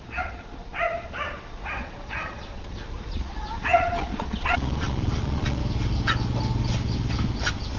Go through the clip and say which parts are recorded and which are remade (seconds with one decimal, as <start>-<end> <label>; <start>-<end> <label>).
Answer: 0.0-5.6 remade; 5.6-7.8 recorded